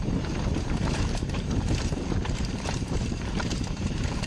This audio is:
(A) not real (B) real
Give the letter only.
A